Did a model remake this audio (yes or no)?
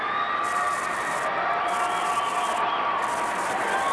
no